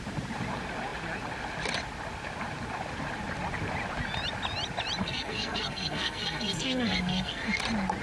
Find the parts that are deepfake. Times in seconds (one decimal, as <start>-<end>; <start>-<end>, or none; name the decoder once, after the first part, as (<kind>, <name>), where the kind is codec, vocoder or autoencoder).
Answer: 5.0-7.6 (codec, SNAC)

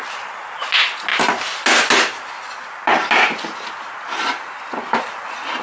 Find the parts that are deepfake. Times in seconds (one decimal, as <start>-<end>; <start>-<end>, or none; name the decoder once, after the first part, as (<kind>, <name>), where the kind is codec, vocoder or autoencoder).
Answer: none